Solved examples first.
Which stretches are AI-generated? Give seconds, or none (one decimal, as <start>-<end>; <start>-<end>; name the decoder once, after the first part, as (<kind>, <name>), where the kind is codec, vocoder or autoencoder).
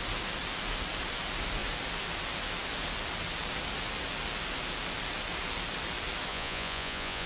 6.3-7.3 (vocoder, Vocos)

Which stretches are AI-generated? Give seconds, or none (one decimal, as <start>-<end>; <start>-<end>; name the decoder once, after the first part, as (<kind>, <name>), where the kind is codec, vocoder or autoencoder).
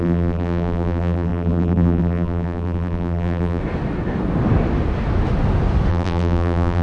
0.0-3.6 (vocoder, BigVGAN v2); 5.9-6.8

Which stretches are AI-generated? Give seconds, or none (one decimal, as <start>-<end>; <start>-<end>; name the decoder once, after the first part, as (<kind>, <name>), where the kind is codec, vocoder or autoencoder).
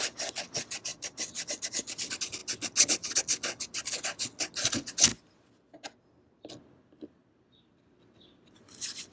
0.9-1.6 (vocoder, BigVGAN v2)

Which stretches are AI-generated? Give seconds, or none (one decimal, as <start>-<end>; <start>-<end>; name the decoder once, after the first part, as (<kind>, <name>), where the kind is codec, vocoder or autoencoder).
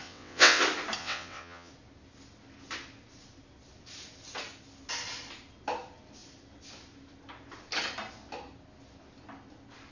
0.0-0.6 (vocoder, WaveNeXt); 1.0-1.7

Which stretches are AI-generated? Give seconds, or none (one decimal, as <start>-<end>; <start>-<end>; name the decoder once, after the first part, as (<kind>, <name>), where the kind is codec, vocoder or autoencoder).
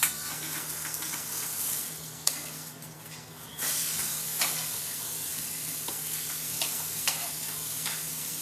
0.0-8.4 (codec, SNAC)